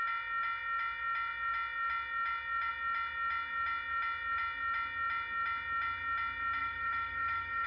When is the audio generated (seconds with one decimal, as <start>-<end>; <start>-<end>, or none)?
6.6-7.7